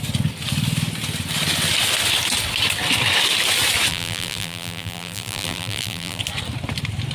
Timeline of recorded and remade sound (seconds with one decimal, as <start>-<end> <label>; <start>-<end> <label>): 0.0-3.9 recorded; 3.9-6.2 remade; 6.2-7.1 recorded